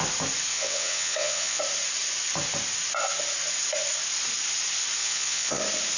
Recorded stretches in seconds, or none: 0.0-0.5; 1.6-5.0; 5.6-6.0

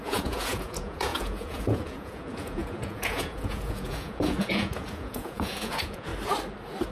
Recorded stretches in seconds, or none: 6.1-6.9

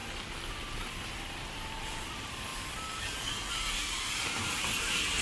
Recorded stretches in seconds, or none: 0.0-0.5; 2.5-3.5

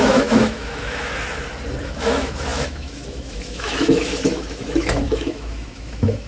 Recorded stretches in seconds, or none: 1.1-1.8

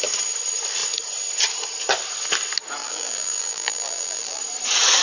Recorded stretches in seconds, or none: 0.0-2.8; 4.4-5.0

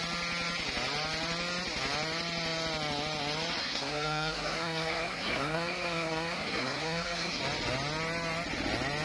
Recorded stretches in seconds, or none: 0.0-3.6; 7.4-9.0

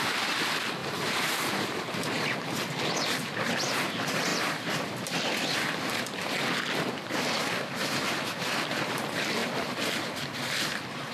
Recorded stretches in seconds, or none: 0.0-11.1